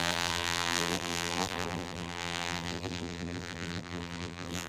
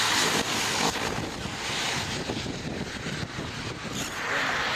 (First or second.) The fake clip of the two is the first